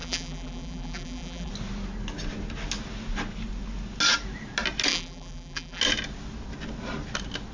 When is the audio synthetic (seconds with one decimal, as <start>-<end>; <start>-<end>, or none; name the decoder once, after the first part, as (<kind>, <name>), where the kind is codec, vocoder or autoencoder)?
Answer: 0.0-1.5 (vocoder, BigVGAN v2); 4.9-5.8